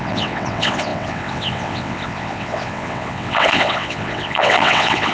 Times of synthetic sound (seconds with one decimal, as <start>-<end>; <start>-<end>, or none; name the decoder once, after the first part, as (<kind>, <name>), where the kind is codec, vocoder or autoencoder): 0.0-5.1 (vocoder, WaveNeXt)